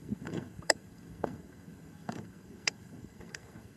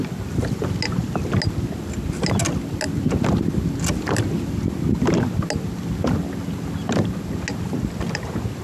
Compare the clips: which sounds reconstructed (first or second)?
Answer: first